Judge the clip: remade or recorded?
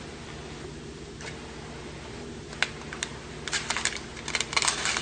recorded